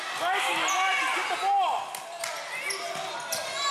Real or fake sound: real